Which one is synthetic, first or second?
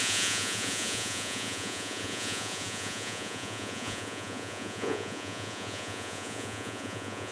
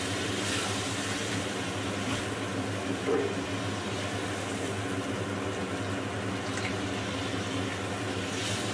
first